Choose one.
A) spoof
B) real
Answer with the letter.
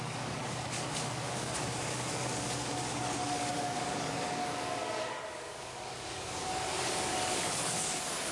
A